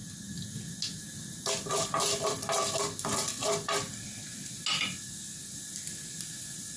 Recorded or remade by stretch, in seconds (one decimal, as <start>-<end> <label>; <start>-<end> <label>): 0.0-6.8 recorded